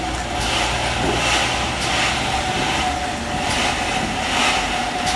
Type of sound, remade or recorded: recorded